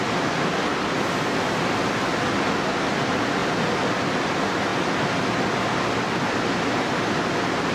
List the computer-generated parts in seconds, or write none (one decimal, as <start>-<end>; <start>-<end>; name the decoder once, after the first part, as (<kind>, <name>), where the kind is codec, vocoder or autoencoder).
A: none